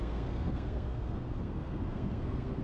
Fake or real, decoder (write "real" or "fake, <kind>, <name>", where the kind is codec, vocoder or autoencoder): fake, codec, SNAC